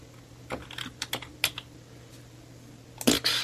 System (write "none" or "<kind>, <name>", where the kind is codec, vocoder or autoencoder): none